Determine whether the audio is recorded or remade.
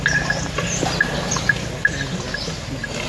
recorded